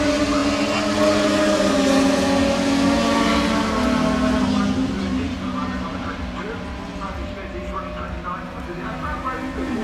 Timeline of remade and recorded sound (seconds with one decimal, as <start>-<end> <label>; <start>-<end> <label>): 0.0-9.8 recorded